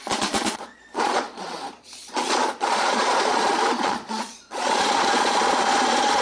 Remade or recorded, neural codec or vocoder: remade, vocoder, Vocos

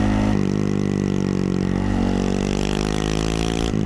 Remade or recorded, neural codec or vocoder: recorded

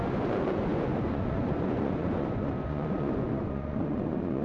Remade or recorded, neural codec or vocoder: remade, vocoder, Vocos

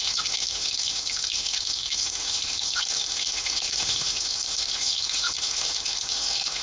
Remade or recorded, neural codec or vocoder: remade, autoencoder, DAC-VAE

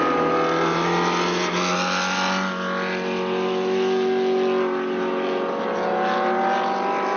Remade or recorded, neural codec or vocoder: recorded